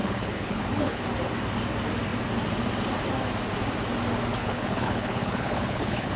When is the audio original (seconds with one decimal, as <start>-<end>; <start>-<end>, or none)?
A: 1.0-4.4